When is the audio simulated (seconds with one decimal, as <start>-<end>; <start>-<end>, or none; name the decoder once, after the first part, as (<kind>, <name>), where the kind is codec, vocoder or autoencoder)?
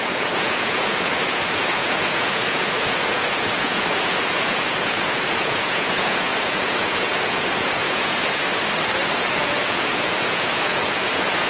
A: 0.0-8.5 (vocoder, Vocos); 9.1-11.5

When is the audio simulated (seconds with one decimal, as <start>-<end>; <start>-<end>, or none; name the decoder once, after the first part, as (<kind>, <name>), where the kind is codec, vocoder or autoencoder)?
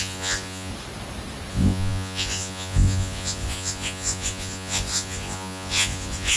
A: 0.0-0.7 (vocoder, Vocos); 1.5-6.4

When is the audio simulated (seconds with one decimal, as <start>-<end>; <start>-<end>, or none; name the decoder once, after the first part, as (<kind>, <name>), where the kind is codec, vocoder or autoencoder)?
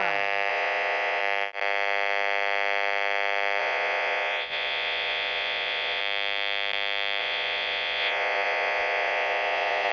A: 0.5-1.2 (vocoder, Vocos); 3.6-6.0; 7.2-9.9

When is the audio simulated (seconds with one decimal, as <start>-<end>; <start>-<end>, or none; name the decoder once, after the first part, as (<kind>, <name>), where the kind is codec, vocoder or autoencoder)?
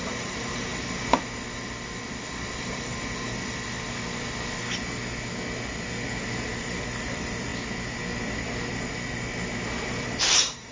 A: 0.0-0.7 (vocoder, BigVGAN v2); 2.5-2.9; 6.6-7.5; 9.8-10.7